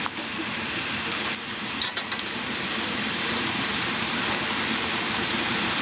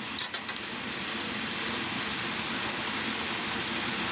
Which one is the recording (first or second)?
second